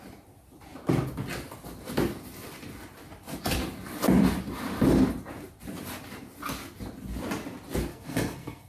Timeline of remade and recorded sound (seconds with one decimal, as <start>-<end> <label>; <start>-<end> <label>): 0.0-7.9 recorded; 7.9-8.7 remade